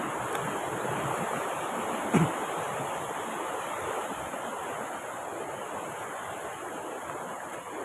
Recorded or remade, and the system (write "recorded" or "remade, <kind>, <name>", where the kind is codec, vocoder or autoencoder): recorded